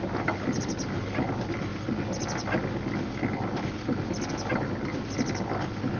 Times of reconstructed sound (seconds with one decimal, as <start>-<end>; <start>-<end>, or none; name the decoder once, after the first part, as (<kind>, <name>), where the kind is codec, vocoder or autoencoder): none